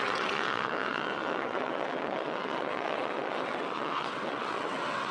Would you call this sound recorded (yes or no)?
no